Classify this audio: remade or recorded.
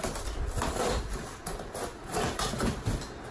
recorded